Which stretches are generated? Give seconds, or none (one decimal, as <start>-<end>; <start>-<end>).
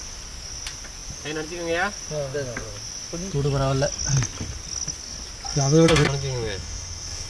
5.5-7.3